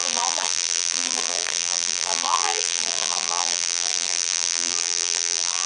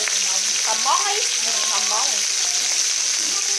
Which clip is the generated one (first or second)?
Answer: first